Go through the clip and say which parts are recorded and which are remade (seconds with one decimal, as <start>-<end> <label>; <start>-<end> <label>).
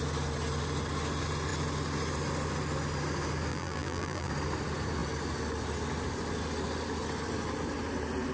0.0-3.5 recorded; 3.5-4.3 remade; 4.3-8.3 recorded